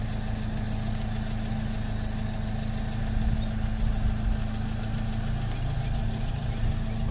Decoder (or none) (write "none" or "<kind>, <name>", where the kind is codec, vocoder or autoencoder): none